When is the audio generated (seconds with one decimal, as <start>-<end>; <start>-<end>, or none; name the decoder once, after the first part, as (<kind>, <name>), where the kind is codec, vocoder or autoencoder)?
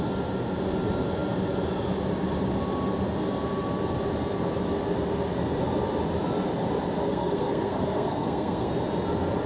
7.1-8.7 (codec, SNAC)